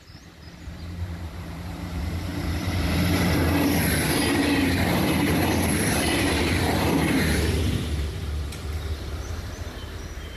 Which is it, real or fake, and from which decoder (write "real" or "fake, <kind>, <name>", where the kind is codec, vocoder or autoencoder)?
fake, vocoder, BigVGAN v2